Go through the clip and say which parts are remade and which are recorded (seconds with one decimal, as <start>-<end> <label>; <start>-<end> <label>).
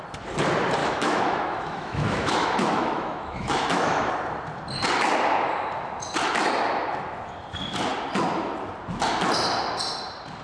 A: 0.0-0.8 recorded; 0.8-4.1 remade; 4.1-10.4 recorded